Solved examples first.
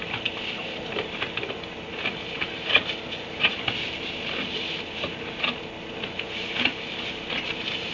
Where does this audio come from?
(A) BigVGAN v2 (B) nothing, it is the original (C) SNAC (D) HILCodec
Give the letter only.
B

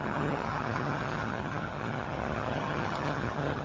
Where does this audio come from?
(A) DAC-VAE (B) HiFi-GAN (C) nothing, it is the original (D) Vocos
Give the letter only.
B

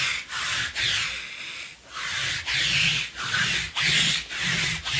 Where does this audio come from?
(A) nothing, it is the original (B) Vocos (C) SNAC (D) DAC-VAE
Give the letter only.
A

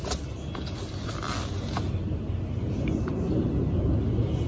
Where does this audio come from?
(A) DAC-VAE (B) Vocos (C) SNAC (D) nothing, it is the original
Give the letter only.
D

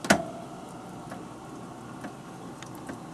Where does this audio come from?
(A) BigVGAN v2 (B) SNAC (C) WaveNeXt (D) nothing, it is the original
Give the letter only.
D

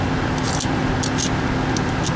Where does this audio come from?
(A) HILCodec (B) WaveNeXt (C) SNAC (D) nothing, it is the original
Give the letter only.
D